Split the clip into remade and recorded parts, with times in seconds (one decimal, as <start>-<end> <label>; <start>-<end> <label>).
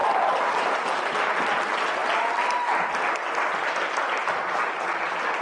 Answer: 0.0-5.4 recorded